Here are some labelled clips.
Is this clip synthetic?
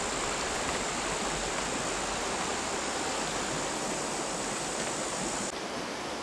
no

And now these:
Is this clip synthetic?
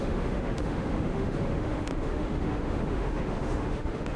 yes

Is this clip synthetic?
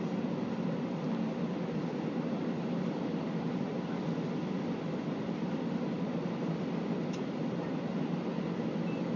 no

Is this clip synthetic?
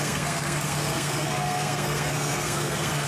yes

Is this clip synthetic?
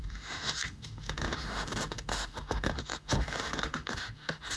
yes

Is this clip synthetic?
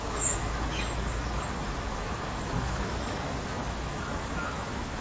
yes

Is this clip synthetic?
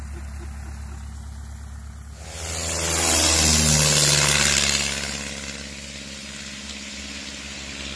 no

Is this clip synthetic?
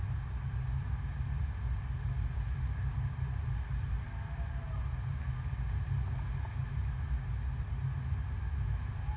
no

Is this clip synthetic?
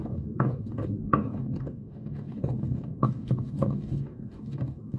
yes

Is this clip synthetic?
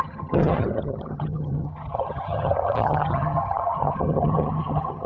yes